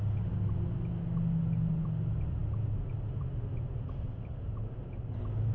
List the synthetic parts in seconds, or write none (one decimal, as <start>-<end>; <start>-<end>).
none